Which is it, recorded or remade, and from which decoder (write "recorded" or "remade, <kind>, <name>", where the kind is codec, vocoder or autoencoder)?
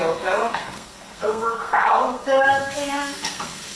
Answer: remade, codec, SNAC